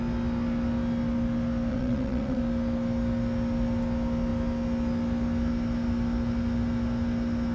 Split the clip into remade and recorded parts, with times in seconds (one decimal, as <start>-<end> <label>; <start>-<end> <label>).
0.0-1.7 recorded; 1.7-2.4 remade; 2.4-7.5 recorded